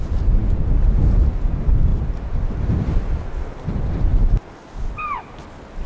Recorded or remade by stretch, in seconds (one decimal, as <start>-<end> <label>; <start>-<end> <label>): 0.0-1.9 recorded; 1.9-3.2 remade; 3.2-5.9 recorded